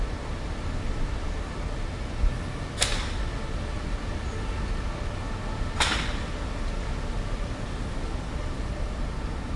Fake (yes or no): no